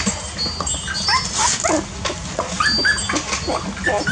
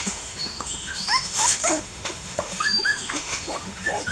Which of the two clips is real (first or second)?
first